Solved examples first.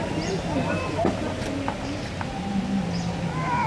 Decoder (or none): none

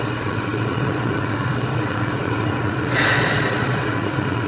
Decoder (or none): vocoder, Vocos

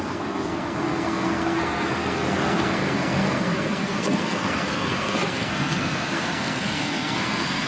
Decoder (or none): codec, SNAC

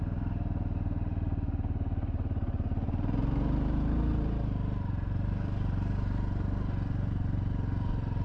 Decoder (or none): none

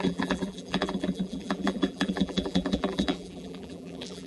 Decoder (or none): vocoder, BigVGAN v2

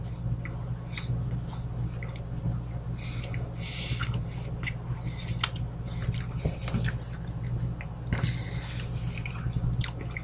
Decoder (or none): none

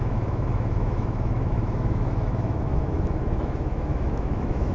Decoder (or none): autoencoder, DAC-VAE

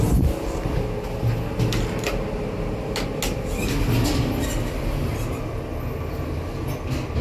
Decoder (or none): none